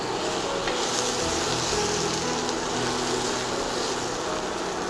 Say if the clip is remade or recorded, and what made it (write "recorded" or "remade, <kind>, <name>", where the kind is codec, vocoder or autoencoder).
recorded